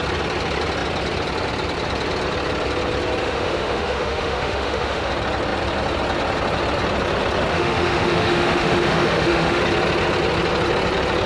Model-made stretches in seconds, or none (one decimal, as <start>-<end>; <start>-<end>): 3.2-5.1; 7.5-9.6